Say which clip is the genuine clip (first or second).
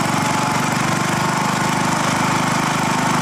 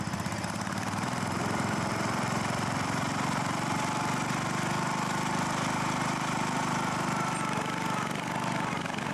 first